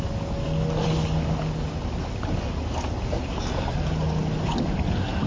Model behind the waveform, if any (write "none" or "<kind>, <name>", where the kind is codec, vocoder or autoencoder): none